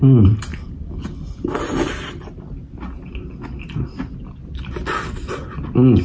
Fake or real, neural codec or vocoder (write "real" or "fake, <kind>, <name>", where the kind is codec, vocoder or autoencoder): real